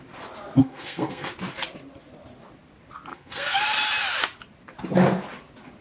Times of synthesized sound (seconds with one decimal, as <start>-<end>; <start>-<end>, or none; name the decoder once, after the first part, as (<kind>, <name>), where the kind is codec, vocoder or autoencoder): 0.6-1.3 (codec, SNAC); 3.1-3.6